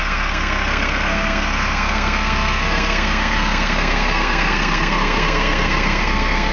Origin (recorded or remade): remade